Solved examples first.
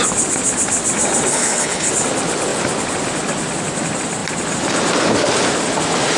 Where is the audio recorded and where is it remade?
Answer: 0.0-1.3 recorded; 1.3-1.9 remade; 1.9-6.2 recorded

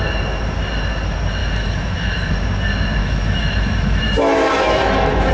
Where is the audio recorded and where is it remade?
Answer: 0.0-1.4 recorded; 1.4-2.3 remade; 2.3-3.0 recorded; 3.0-5.3 remade

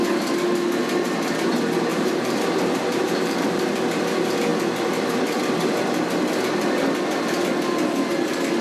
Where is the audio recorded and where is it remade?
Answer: 0.0-1.9 recorded; 1.9-3.8 remade; 3.8-8.6 recorded

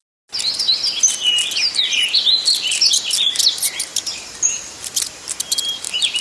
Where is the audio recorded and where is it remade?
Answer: 0.0-3.9 recorded; 3.9-6.2 remade